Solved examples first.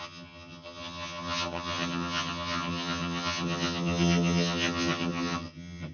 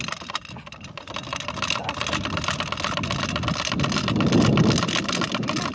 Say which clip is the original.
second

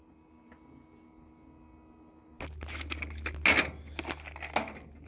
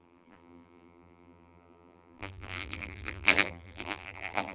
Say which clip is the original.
first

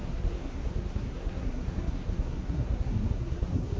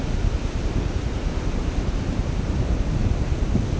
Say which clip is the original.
second